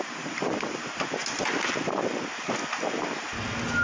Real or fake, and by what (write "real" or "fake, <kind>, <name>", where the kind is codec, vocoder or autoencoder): real